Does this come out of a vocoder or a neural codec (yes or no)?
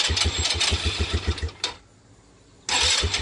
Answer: no